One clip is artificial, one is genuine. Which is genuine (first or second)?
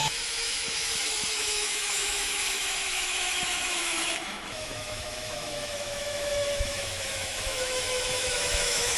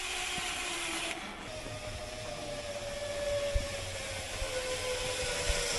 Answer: second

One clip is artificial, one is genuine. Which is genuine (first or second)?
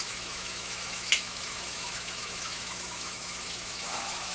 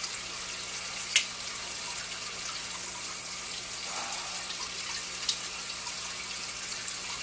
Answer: second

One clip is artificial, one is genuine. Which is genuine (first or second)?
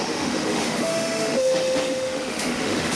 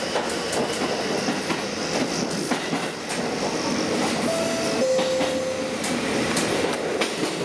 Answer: second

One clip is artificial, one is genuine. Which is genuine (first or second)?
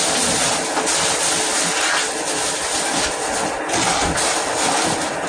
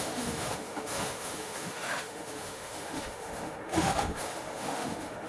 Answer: first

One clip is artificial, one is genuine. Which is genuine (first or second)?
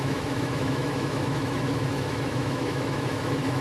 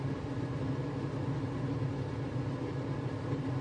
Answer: second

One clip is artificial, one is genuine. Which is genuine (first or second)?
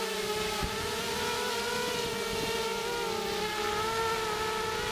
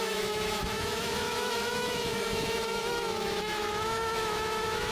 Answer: first